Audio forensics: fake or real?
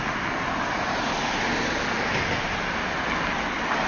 real